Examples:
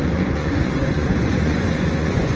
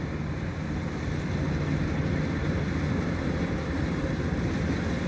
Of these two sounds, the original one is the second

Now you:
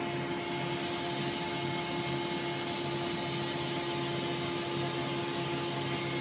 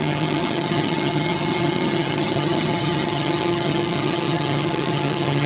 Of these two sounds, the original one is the first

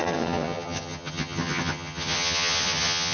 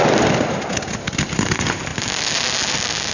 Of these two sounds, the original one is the second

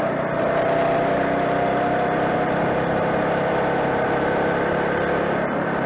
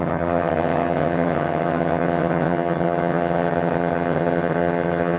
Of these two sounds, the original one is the first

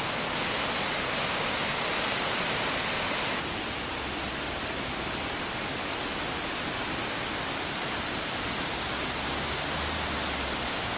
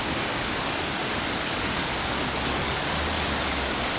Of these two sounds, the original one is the first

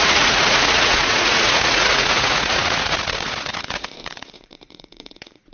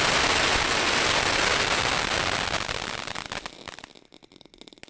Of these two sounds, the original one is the second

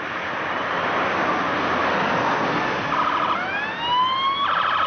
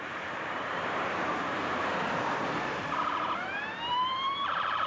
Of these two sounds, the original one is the first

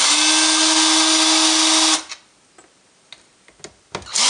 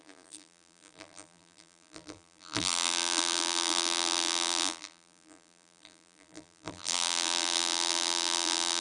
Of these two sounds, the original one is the first